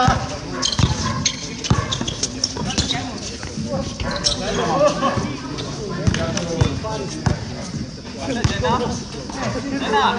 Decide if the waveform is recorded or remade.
recorded